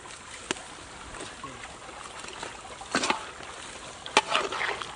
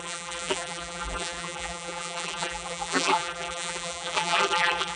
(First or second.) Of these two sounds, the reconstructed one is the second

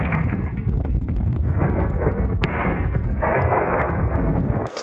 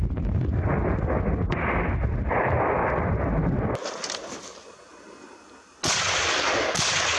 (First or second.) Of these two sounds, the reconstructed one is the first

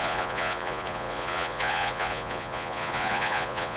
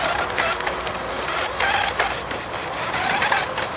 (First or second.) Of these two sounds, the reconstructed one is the first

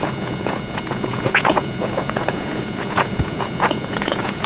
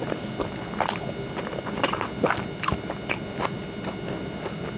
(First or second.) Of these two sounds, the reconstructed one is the first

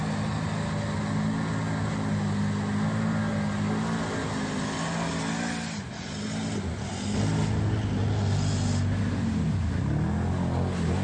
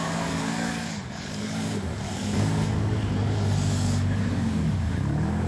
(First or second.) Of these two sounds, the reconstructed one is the second